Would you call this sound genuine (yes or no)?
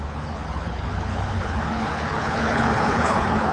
no